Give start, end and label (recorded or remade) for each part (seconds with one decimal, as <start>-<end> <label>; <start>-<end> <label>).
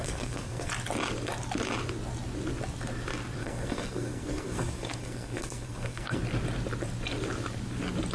0.0-0.7 remade; 0.7-3.4 recorded; 3.4-6.2 remade; 6.2-8.1 recorded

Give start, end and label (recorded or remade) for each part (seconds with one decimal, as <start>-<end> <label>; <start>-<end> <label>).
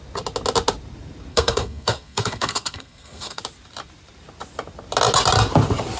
0.0-1.3 recorded; 1.3-3.4 remade; 3.4-6.0 recorded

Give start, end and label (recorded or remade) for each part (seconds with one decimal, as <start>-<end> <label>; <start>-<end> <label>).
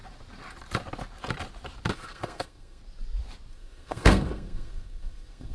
0.0-1.9 recorded; 1.9-2.8 remade; 2.8-3.5 recorded; 3.5-5.5 remade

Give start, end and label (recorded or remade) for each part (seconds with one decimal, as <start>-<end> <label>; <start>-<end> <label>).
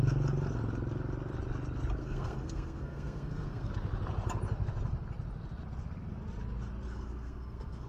0.0-2.0 recorded; 2.0-3.7 remade; 3.7-6.9 recorded; 6.9-7.9 remade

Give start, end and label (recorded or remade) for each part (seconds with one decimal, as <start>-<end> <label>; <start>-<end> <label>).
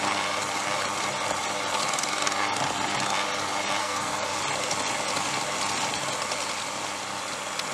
0.0-3.8 recorded; 3.8-4.4 remade; 4.4-7.7 recorded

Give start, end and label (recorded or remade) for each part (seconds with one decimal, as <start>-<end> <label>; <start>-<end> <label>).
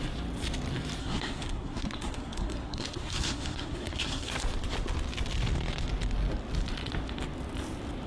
0.0-1.0 recorded; 1.0-4.3 remade; 4.3-8.1 recorded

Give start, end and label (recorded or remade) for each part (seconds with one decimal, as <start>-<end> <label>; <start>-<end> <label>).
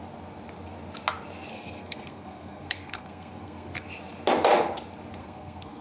0.0-1.5 recorded; 1.5-3.9 remade; 3.9-5.2 recorded; 5.2-5.8 remade